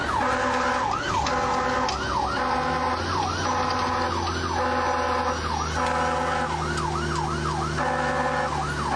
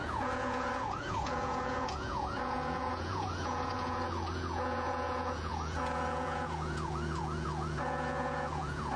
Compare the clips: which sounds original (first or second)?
first